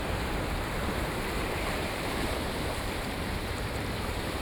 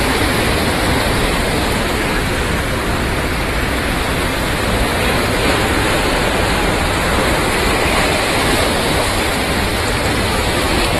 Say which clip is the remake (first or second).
first